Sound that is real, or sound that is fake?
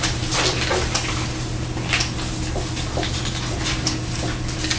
real